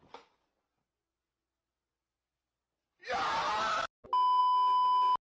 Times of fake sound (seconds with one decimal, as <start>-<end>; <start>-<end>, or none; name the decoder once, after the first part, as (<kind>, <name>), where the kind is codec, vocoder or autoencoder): none